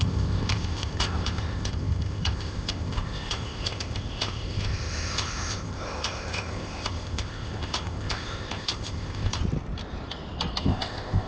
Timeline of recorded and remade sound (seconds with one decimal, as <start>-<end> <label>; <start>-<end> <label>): 0.0-9.4 remade; 9.4-10.6 recorded; 10.6-11.3 remade